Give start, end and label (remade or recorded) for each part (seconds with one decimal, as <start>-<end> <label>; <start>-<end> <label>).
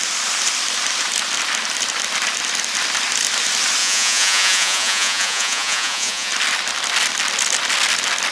0.0-3.8 recorded; 3.8-6.3 remade; 6.3-8.3 recorded